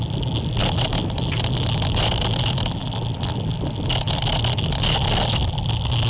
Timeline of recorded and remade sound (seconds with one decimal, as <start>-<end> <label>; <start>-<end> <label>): 0.0-6.1 recorded